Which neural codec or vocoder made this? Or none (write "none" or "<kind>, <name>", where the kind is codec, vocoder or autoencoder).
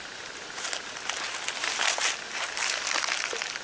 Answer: none